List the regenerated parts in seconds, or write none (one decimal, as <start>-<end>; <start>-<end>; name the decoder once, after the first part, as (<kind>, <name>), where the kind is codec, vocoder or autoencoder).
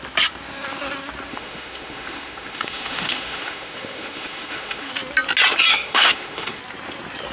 1.3-4.9 (autoencoder, DAC-VAE); 5.7-6.6